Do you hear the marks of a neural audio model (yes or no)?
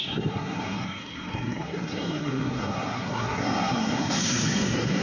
yes